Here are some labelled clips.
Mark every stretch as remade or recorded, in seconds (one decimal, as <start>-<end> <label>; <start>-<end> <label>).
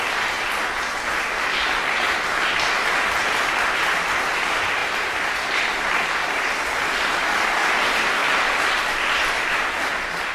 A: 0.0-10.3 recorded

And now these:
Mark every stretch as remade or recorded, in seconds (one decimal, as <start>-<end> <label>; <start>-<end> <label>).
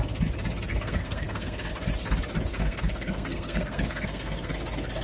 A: 0.0-0.7 recorded; 0.7-1.7 remade; 1.7-2.5 recorded; 2.5-4.5 remade; 4.5-5.0 recorded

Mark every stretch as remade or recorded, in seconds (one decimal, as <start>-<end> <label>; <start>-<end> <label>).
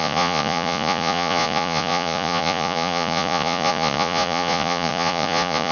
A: 0.0-5.7 remade